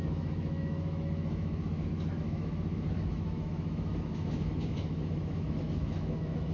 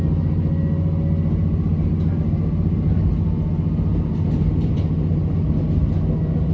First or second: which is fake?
first